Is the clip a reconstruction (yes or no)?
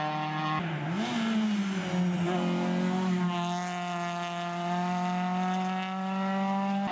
no